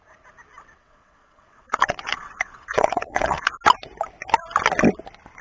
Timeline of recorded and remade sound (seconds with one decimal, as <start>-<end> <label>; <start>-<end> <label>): 0.0-0.8 recorded; 0.8-3.5 remade; 3.5-5.4 recorded

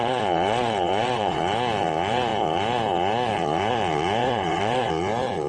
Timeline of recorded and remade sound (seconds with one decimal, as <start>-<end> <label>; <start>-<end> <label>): 0.0-1.4 remade; 1.4-4.2 recorded; 4.2-4.9 remade; 4.9-5.5 recorded

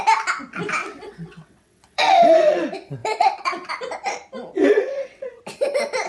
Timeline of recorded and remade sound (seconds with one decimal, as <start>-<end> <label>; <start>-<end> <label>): 0.0-0.8 recorded; 0.8-2.6 remade; 2.6-3.0 recorded; 3.0-3.7 remade; 3.7-4.6 recorded; 4.6-5.4 remade; 5.4-6.1 recorded

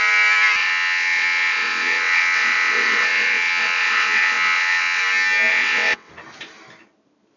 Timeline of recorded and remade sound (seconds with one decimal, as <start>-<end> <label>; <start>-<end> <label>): 0.0-0.6 recorded; 0.6-5.0 remade; 5.0-5.5 recorded; 5.5-6.1 remade; 6.1-7.4 recorded